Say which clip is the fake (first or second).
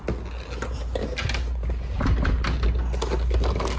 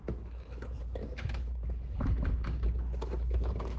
second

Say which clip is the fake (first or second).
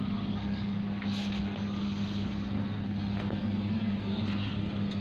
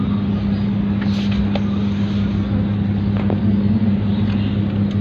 first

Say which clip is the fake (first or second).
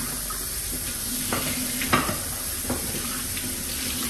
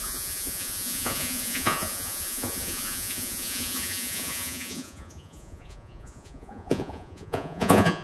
second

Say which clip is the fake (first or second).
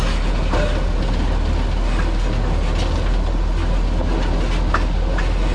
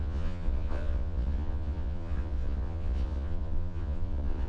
second